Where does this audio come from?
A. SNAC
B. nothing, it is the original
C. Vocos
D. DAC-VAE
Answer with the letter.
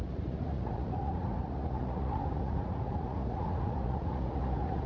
C